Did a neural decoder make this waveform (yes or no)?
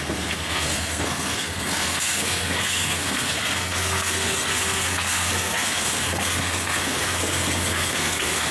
yes